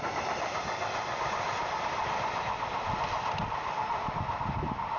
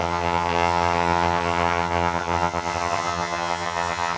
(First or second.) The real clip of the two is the first